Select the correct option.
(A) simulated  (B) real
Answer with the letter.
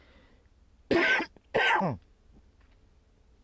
B